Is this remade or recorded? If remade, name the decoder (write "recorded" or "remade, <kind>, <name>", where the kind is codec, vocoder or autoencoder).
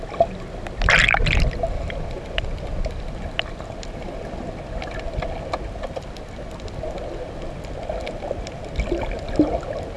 recorded